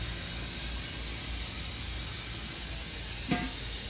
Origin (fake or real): real